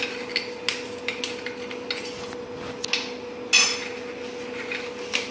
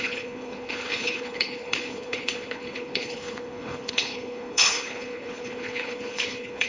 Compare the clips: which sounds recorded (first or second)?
first